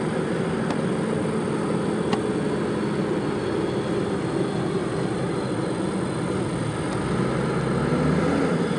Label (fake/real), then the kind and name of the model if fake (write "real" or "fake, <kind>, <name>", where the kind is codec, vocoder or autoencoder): real